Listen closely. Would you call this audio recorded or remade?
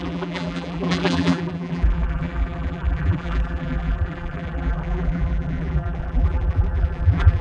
remade